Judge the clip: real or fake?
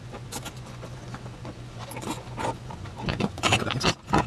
fake